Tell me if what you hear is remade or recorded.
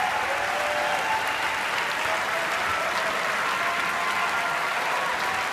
recorded